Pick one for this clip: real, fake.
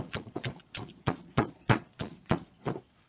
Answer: fake